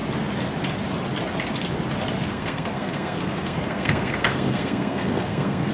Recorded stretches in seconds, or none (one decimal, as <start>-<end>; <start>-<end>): 0.0-2.3

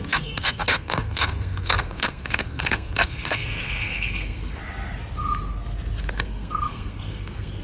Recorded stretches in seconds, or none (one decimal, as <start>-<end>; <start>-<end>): 4.6-6.1

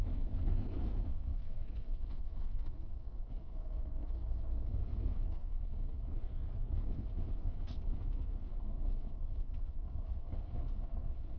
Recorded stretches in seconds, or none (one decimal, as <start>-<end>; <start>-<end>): none

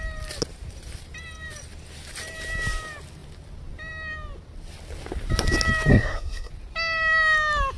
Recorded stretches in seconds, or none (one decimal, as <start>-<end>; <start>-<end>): 0.0-5.9; 6.5-7.8

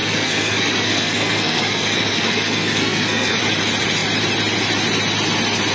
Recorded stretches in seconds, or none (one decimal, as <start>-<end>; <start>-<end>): 3.4-5.7

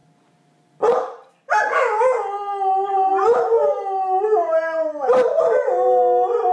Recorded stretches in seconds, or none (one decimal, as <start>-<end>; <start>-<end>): 0.0-6.5

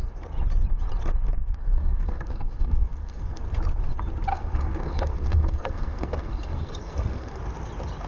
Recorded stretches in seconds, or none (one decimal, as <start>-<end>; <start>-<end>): 0.0-1.4; 3.4-4.3; 7.4-8.1